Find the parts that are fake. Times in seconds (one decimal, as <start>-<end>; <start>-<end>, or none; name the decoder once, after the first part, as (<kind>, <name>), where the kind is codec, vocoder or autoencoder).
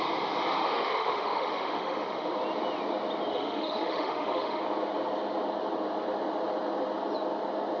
0.6-2.3 (autoencoder, DAC-VAE); 3.3-4.6